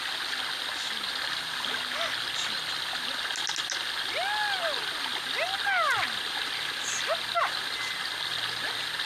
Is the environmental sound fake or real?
real